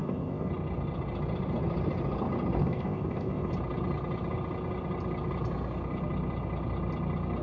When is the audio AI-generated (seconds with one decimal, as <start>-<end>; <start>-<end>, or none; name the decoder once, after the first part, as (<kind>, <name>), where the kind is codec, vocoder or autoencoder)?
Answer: 0.0-0.5 (codec, ZipCodec); 2.6-3.5